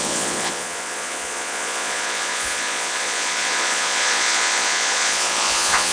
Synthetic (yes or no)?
yes